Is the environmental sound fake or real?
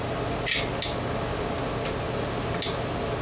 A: real